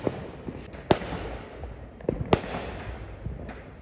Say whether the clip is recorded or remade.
recorded